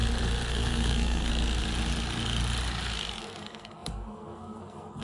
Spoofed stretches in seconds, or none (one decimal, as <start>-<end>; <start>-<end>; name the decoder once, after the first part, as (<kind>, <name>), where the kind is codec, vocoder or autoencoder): 0.5-1.3 (codec, SNAC); 3.2-5.0